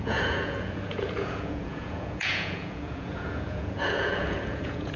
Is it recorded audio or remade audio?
remade